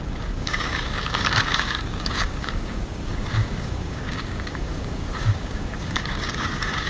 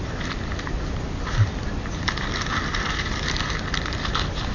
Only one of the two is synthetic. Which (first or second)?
first